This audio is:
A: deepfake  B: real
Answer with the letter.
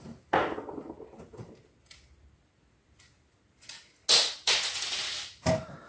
B